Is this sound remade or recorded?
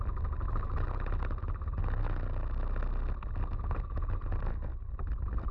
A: recorded